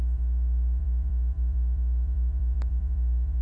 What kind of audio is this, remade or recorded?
remade